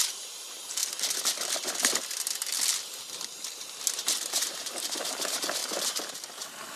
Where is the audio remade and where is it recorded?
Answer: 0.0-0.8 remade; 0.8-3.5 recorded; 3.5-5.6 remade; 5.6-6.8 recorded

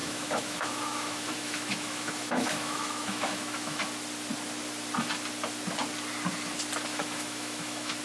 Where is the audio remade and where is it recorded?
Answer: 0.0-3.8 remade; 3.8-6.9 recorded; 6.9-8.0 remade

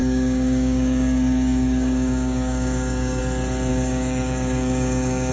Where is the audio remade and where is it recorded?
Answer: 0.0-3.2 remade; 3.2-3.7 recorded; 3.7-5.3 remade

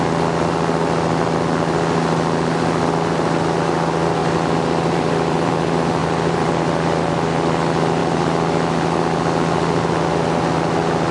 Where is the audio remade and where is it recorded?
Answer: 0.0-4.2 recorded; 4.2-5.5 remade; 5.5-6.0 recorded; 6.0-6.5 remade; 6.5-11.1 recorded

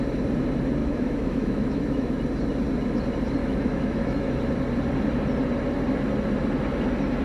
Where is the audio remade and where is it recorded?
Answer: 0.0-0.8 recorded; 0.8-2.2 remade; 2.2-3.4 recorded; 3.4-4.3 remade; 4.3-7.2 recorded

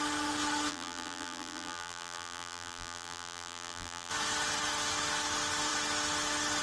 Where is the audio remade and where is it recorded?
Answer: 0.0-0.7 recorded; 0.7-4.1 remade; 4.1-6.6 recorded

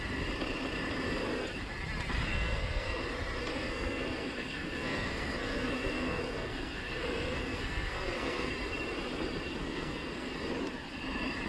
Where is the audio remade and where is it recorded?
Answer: 0.0-2.3 recorded; 2.3-3.0 remade; 3.0-3.5 recorded; 3.5-8.5 remade; 8.5-9.6 recorded; 9.6-10.3 remade; 10.3-11.5 recorded

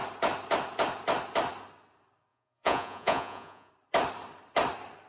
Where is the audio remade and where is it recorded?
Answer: 0.0-2.3 recorded; 2.3-3.7 remade; 3.7-5.1 recorded